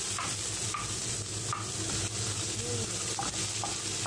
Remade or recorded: recorded